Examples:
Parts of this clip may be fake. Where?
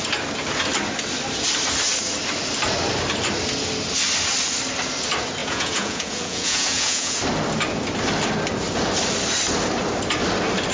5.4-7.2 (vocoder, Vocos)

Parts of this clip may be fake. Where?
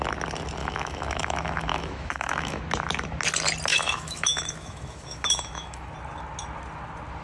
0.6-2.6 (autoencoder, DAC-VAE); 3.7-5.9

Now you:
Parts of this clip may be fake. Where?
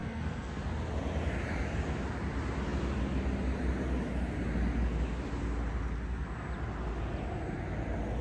0.0-0.6 (codec, SNAC)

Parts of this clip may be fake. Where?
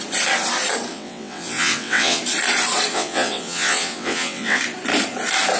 0.9-2.2 (vocoder, WaveNeXt); 2.9-4.6